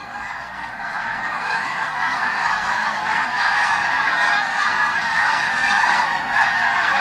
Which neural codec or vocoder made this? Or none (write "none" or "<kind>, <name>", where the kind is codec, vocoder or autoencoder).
codec, SNAC